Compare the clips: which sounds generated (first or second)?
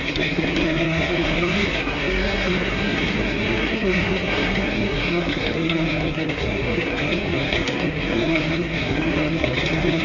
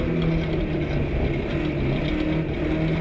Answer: first